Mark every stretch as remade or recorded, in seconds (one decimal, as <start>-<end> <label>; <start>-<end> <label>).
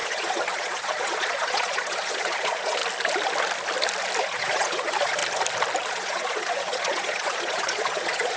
0.0-2.8 remade; 2.8-4.2 recorded; 4.2-5.2 remade; 5.2-5.9 recorded; 5.9-8.4 remade